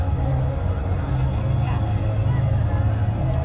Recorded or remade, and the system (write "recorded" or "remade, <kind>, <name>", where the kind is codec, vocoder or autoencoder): recorded